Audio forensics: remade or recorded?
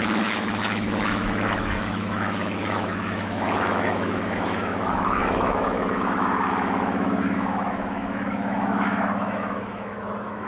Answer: remade